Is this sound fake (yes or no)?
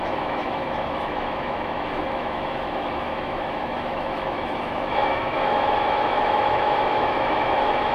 yes